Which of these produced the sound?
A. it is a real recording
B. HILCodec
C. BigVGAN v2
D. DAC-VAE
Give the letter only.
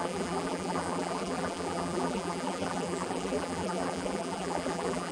C